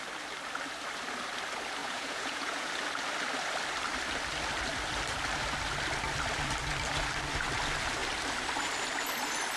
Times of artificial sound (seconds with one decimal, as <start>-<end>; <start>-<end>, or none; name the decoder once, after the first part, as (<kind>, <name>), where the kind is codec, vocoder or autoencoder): 1.8-2.7 (vocoder, Vocos)